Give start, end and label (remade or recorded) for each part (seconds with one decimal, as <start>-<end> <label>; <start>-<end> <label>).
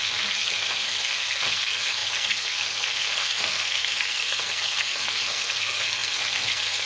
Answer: 0.0-6.9 remade